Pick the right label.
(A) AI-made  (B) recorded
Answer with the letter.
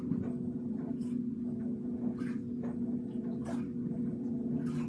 B